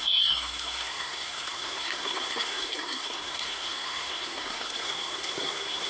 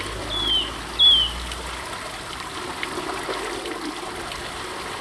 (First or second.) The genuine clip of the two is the second